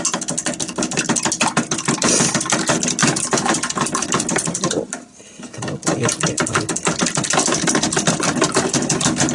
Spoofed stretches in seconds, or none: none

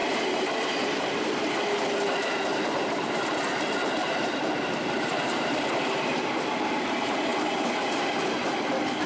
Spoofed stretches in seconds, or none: 0.0-1.5 (vocoder, BigVGAN v2); 2.5-3.4; 4.0-5.5

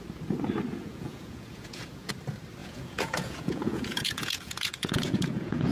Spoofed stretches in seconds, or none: 0.7-2.1 (vocoder, Vocos); 2.6-5.7